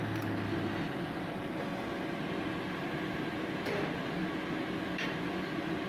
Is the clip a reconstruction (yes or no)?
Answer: no